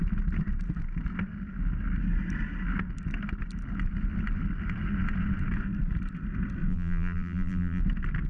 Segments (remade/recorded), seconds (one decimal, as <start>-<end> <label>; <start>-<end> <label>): 0.0-6.7 recorded; 6.7-7.8 remade; 7.8-8.3 recorded